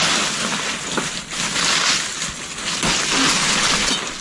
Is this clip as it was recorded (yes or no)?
yes